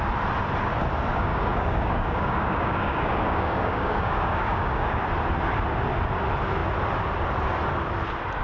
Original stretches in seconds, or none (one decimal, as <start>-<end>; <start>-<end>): 0.0-1.1; 5.0-8.4